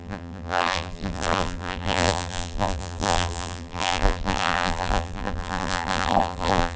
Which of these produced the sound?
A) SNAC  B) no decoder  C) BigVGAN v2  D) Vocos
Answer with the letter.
C